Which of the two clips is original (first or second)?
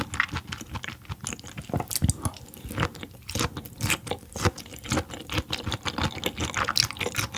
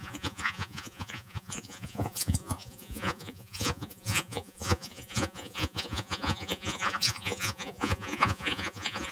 first